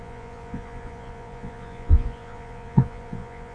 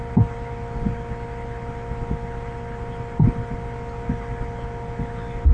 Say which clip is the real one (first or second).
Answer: second